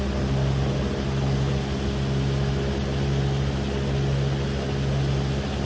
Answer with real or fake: real